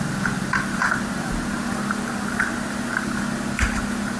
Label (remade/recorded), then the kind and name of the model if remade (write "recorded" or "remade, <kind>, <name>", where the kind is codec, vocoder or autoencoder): recorded